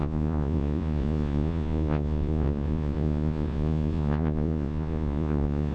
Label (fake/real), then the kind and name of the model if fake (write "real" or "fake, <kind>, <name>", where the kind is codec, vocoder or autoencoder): fake, vocoder, Vocos